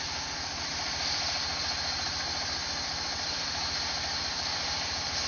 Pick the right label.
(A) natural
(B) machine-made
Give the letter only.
B